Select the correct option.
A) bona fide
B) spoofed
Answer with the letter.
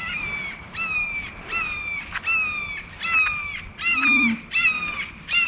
A